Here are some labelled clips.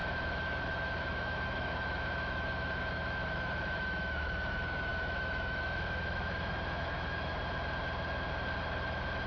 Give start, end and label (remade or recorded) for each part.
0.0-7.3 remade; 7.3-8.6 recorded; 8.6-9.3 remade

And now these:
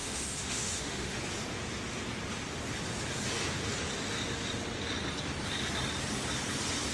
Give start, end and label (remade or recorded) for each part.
0.0-1.2 remade; 1.2-6.9 recorded

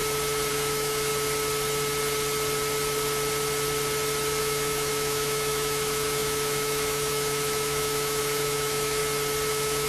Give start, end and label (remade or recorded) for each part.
0.0-0.5 recorded; 0.5-1.1 remade; 1.1-4.4 recorded; 4.4-9.0 remade; 9.0-9.5 recorded; 9.5-9.9 remade

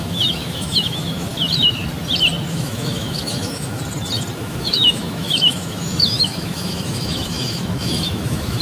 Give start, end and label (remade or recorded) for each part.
0.0-1.3 remade; 1.3-2.5 recorded; 2.5-3.8 remade; 3.8-4.4 recorded; 4.4-8.6 remade